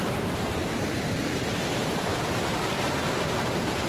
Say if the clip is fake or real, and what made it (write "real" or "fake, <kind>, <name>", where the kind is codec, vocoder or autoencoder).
fake, vocoder, BigVGAN v2